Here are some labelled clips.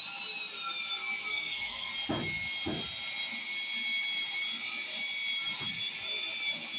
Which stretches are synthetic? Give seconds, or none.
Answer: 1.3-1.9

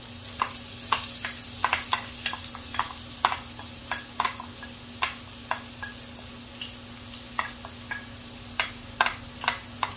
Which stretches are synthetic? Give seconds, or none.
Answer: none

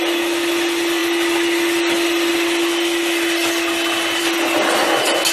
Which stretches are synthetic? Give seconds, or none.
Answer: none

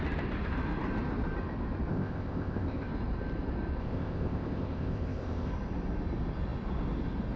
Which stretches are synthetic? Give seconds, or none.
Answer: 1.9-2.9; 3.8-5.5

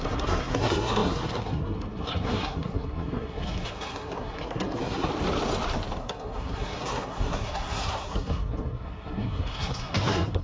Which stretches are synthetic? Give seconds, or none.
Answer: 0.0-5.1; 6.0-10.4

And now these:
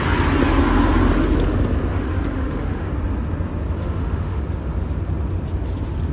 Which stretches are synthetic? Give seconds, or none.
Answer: 1.9-2.9; 3.8-4.4

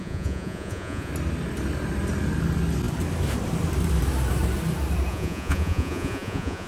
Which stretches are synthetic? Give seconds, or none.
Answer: 0.0-1.1; 5.1-6.7

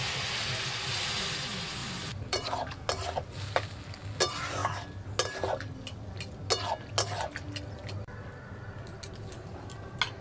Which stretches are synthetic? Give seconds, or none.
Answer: 1.8-2.8